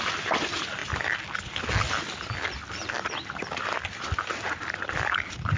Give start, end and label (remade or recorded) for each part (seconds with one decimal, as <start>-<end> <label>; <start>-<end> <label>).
0.0-0.8 remade; 0.8-4.2 recorded; 4.2-5.6 remade